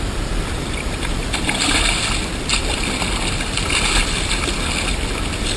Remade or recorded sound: recorded